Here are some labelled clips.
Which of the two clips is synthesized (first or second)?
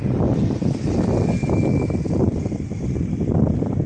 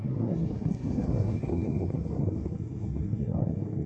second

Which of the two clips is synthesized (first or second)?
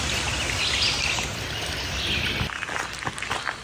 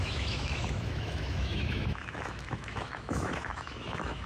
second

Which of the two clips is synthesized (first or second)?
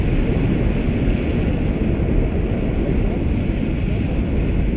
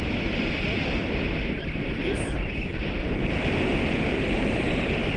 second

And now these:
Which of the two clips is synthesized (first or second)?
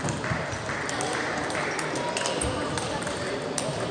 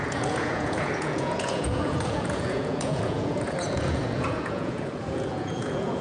second